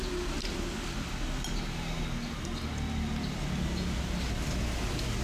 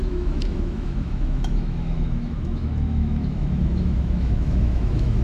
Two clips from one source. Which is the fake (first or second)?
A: second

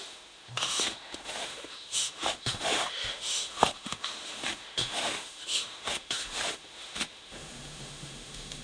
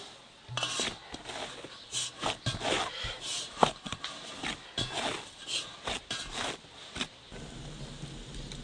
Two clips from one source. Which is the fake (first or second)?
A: first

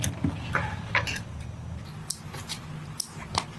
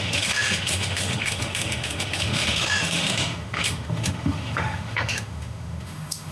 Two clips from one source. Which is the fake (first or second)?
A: second